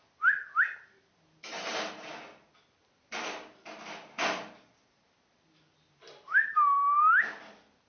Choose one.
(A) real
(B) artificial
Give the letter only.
A